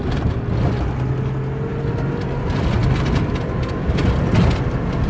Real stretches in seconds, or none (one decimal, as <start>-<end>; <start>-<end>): 0.0-5.1